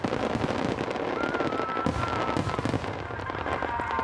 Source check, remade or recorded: recorded